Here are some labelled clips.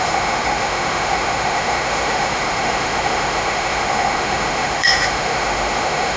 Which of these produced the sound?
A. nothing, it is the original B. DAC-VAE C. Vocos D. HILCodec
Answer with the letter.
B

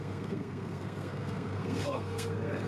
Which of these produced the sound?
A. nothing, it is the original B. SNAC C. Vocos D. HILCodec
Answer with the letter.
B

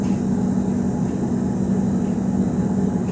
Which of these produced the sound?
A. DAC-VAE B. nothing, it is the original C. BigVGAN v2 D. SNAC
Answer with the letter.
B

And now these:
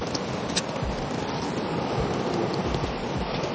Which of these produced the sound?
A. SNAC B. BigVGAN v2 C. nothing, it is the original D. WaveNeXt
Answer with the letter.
B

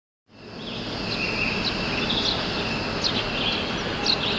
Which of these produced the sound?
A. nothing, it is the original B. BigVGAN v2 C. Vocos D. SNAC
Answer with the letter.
A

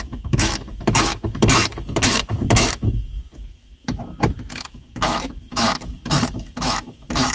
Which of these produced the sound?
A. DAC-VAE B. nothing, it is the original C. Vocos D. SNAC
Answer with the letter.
A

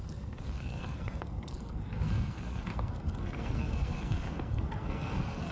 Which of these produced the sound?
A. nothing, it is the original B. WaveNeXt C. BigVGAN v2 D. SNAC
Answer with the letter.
D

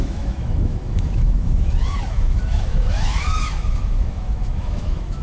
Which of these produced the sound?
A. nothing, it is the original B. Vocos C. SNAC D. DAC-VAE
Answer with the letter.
D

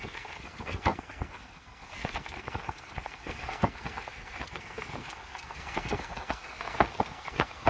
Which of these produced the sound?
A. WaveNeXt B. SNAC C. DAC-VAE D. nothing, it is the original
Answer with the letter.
B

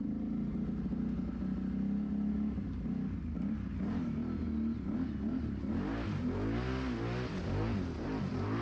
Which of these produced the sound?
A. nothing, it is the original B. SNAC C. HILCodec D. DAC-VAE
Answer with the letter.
A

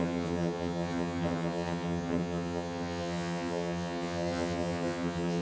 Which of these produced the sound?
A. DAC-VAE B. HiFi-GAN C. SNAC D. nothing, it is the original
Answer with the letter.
B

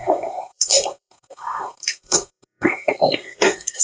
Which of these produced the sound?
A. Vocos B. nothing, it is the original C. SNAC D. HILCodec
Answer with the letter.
C